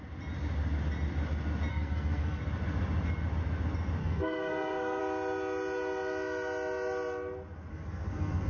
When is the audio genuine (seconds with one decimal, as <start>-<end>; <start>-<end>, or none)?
0.0-1.7; 2.4-4.0; 5.0-7.7